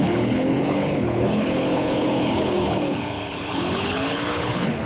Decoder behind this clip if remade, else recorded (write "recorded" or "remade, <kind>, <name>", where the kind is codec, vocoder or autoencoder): remade, codec, HILCodec